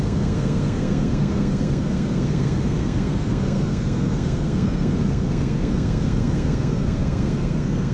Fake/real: fake